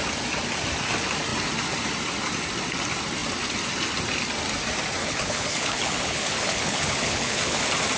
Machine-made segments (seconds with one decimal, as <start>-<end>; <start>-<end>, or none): 5.0-7.6